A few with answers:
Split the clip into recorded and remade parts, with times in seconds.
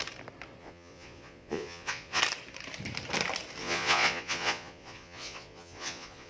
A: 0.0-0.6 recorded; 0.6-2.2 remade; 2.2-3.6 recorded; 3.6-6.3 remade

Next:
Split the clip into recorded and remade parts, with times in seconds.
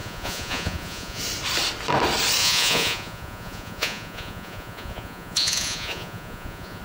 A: 0.0-1.2 remade; 1.2-2.4 recorded; 2.4-6.8 remade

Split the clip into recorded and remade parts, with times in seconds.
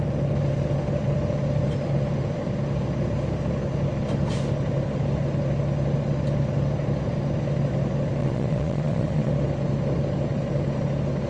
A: 0.0-8.2 recorded; 8.2-9.3 remade; 9.3-11.3 recorded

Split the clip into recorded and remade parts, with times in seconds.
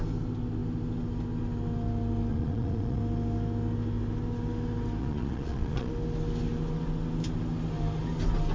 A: 0.0-2.3 recorded; 2.3-3.0 remade; 3.0-5.0 recorded; 5.0-5.9 remade; 5.9-8.5 recorded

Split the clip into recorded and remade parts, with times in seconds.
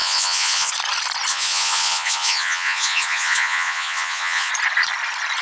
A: 0.0-0.7 remade; 0.7-1.3 recorded; 1.3-4.5 remade; 4.5-5.4 recorded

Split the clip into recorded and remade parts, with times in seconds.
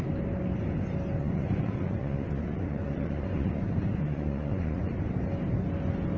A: 0.0-1.2 recorded; 1.2-4.9 remade; 4.9-6.2 recorded